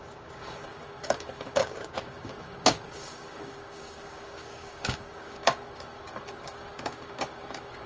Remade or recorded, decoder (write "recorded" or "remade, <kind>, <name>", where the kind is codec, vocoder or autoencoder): remade, codec, DAC